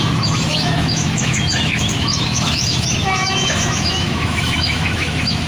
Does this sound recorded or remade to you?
remade